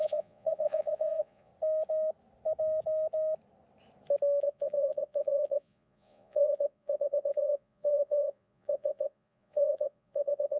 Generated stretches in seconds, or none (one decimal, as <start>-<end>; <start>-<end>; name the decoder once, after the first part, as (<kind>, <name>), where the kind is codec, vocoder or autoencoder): 0.0-1.5 (vocoder, Vocos); 4.4-10.6